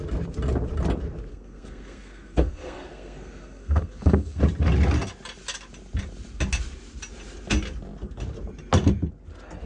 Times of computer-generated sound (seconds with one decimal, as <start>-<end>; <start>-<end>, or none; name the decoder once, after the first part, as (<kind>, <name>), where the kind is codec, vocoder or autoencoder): 1.3-4.4 (codec, SNAC)